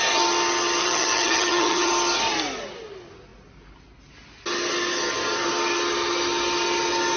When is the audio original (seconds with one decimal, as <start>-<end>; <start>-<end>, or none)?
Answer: 0.0-0.8; 1.9-7.2

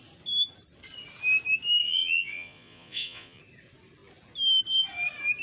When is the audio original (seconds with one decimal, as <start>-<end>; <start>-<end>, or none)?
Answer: 0.0-1.8; 3.4-5.4